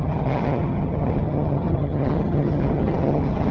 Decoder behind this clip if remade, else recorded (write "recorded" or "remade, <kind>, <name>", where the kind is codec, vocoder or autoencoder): remade, vocoder, HiFi-GAN